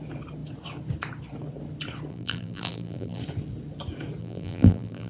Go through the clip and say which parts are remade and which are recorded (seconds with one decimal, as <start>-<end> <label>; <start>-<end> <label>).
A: 0.0-2.1 recorded; 2.1-3.2 remade; 3.2-4.2 recorded; 4.2-5.1 remade